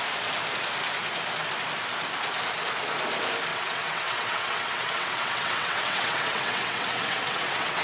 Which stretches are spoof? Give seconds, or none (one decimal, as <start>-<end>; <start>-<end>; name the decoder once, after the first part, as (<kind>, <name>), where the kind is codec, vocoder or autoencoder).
3.5-7.8 (vocoder, WaveNeXt)

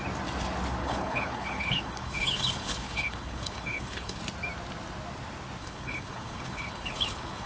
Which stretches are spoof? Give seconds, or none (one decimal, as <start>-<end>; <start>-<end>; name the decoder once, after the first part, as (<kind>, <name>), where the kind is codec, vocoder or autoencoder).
0.8-4.2 (codec, HILCodec); 5.6-7.5

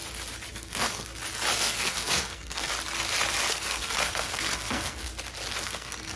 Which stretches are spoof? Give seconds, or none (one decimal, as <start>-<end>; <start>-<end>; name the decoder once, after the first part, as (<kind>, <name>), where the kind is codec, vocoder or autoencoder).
0.5-1.1 (codec, SNAC); 1.6-2.7; 3.5-5.1; 5.6-6.2

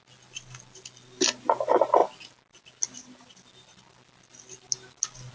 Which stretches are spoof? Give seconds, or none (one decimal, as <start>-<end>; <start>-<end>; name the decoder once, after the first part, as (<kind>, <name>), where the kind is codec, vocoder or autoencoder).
none